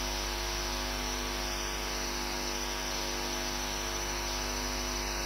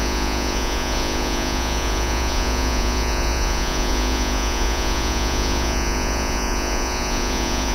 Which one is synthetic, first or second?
second